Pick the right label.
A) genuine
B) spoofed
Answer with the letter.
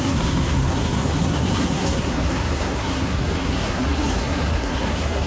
B